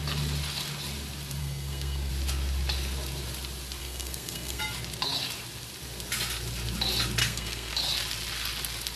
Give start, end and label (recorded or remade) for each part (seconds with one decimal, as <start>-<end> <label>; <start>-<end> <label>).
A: 0.0-1.4 recorded; 1.4-2.1 remade; 2.1-3.8 recorded; 3.8-4.6 remade; 4.6-7.2 recorded; 7.2-7.7 remade; 7.7-9.0 recorded